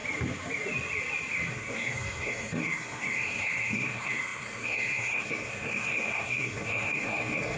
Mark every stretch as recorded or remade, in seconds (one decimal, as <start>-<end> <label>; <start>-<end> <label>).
0.0-1.5 recorded; 1.5-7.6 remade